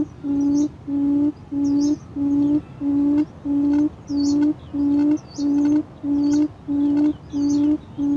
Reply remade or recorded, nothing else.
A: recorded